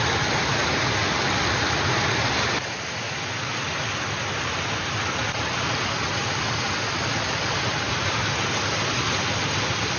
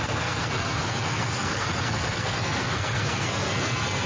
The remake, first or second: second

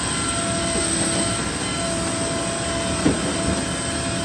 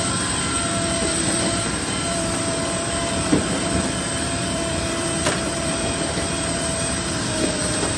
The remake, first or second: second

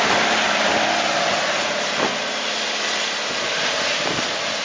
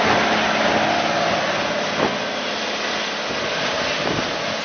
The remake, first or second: first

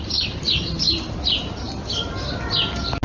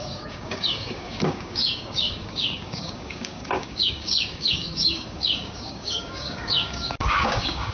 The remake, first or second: second